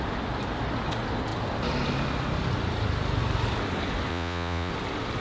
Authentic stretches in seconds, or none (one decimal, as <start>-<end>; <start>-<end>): 0.0-4.1; 4.7-5.2